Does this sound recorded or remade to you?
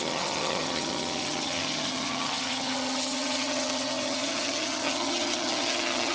remade